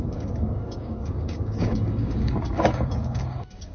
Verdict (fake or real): fake